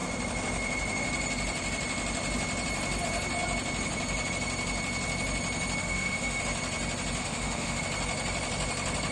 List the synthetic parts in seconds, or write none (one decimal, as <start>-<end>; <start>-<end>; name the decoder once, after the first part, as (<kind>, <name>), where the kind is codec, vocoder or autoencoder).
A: 5.8-6.4 (autoencoder, DAC-VAE); 7.2-7.8

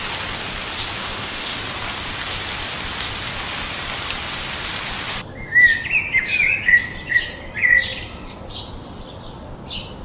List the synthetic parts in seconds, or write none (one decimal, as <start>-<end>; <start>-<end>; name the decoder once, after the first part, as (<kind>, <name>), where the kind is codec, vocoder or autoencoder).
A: 1.0-1.6 (autoencoder, DAC-VAE)